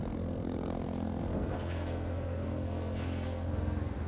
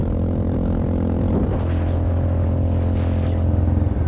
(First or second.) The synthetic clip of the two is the first